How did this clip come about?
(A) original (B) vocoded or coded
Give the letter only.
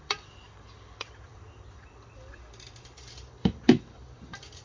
B